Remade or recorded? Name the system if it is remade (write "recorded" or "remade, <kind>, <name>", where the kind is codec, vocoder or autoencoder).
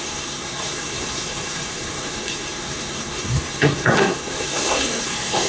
remade, codec, SNAC